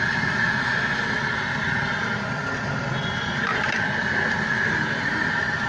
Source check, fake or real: real